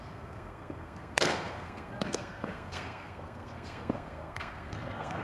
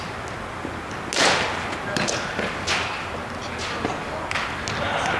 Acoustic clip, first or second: second